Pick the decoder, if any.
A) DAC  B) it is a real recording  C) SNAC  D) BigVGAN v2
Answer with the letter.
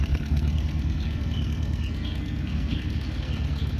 C